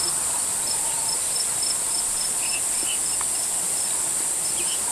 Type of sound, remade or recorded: recorded